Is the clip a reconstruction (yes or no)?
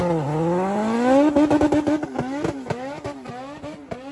no